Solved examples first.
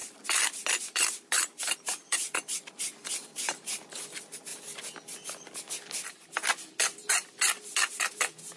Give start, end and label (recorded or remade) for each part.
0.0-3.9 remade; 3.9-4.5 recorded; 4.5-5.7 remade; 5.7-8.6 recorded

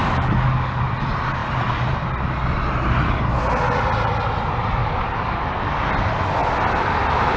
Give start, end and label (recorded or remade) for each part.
0.0-0.8 remade; 0.8-4.8 recorded; 4.8-5.7 remade; 5.7-7.4 recorded

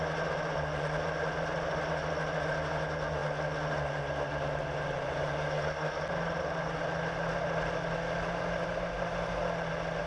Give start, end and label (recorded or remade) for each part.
0.0-10.1 recorded

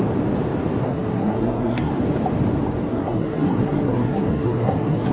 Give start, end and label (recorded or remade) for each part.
0.0-0.8 recorded; 0.8-1.9 remade; 1.9-2.9 recorded; 2.9-5.1 remade

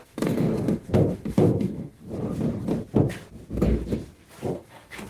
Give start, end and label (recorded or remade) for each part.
0.0-2.0 remade; 2.0-4.5 recorded; 4.5-5.1 remade

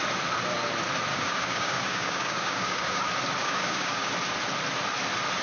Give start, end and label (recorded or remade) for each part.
0.0-1.1 recorded; 1.1-3.0 remade; 3.0-3.4 recorded; 3.4-4.1 remade; 4.1-5.4 recorded

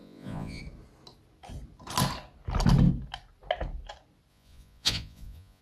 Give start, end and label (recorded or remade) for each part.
0.0-0.6 remade; 0.6-4.3 recorded; 4.3-5.6 remade